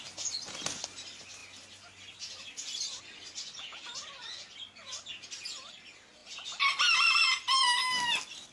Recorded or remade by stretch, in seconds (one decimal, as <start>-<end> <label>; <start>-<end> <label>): 0.0-8.5 recorded